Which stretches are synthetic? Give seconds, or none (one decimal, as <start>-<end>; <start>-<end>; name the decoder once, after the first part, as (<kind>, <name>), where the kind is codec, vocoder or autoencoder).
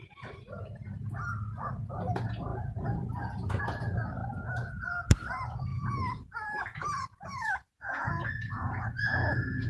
2.5-3.6 (vocoder, Vocos); 5.7-9.7